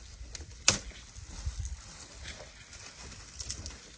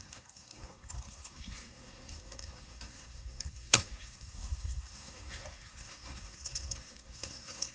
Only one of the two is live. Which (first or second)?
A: first